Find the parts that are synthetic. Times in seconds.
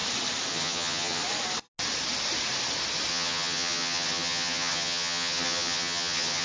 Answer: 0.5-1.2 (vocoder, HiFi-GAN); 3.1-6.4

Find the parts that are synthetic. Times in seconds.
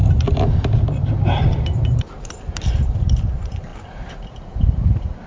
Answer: 0.0-5.3 (vocoder, BigVGAN v2)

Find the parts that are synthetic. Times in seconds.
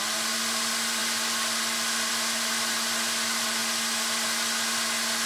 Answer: none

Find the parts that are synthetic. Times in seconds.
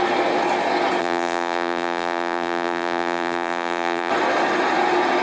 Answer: 1.0-4.1 (vocoder, BigVGAN v2)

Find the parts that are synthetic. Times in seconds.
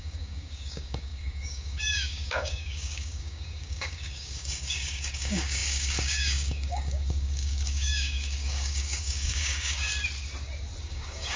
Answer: 0.0-9.9 (codec, DAC); 10.8-11.4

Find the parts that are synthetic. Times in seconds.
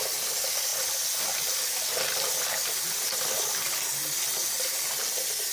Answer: none